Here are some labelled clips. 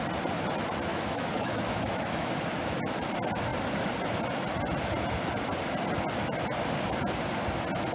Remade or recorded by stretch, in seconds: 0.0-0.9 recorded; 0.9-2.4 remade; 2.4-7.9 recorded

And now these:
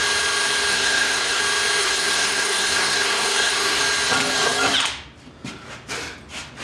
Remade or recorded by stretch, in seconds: 0.0-0.7 recorded; 0.7-1.4 remade; 1.4-1.8 recorded; 1.8-3.8 remade; 3.8-6.6 recorded

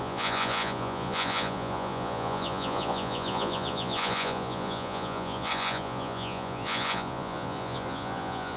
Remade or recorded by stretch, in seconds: 0.0-8.6 remade

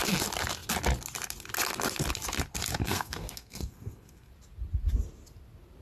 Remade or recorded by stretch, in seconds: 0.0-2.8 recorded; 2.8-4.3 remade; 4.3-5.8 recorded

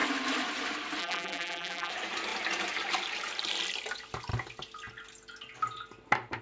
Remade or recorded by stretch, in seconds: 0.0-1.0 recorded; 1.0-1.9 remade; 1.9-6.4 recorded